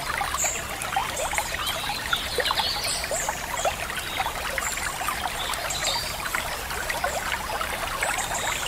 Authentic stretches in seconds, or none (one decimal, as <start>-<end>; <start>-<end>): 0.0-8.7

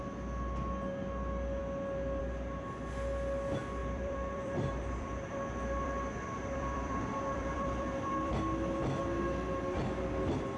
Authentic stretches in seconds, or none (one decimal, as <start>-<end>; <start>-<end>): 0.0-3.8; 8.4-10.6

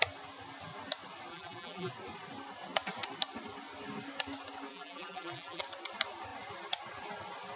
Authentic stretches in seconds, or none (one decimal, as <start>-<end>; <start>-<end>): 0.0-1.3; 1.9-4.7; 5.6-7.6

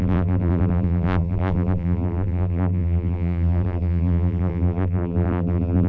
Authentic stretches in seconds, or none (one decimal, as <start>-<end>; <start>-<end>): none

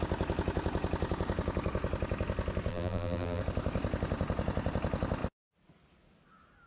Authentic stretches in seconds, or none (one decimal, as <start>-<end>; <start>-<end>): 0.0-2.7; 3.4-6.7

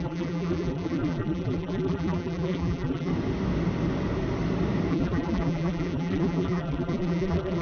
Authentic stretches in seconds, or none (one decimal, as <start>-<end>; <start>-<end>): 3.1-4.9

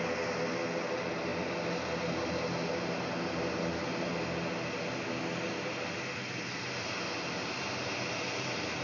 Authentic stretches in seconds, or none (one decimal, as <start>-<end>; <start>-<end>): 0.0-8.8

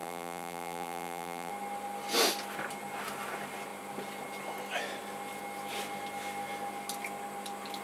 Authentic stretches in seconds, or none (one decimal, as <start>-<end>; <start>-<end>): 1.5-7.8